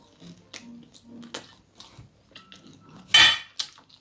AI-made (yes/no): no